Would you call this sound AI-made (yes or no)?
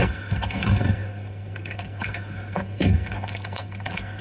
yes